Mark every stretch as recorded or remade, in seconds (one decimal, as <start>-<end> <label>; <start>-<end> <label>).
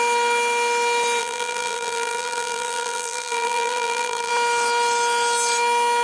0.0-1.2 recorded; 1.2-4.3 remade; 4.3-6.0 recorded